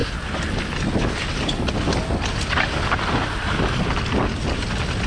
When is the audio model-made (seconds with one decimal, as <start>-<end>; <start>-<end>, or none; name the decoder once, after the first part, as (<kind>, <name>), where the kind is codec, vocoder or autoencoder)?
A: none